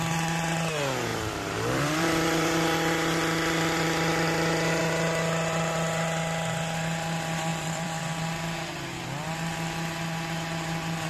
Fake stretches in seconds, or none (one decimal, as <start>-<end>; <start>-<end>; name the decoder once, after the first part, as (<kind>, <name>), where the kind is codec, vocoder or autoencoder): 1.1-4.8 (vocoder, BigVGAN v2); 7.5-8.0